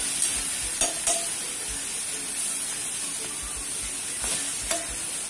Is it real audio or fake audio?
real